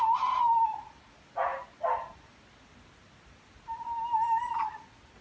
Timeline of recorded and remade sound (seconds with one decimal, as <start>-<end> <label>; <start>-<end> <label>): 0.0-5.2 recorded